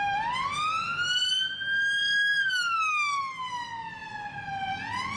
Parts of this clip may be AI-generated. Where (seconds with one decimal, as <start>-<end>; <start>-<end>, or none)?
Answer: none